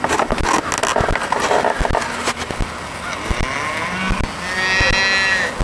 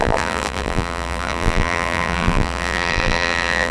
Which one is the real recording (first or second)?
first